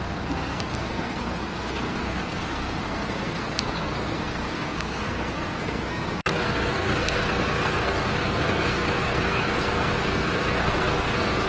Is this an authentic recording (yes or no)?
no